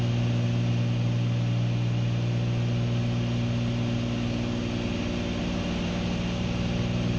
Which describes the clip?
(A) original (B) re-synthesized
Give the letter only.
A